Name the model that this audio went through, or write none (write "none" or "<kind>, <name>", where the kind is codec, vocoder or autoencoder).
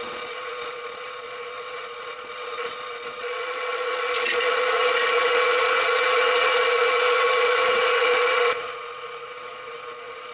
vocoder, Vocos